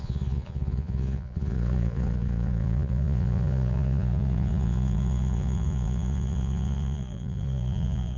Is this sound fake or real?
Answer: fake